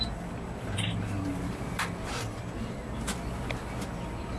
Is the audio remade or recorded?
recorded